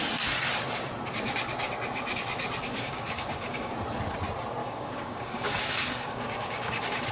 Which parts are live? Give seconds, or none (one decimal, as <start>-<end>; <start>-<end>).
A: 0.0-2.6; 3.7-4.6